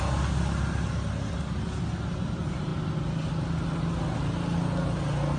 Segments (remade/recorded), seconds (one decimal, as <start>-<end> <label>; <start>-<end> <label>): 0.0-5.4 recorded